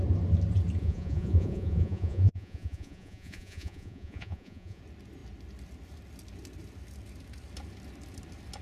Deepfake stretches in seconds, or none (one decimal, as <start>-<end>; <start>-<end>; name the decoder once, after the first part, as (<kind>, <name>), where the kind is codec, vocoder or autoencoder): 0.8-4.8 (vocoder, Vocos)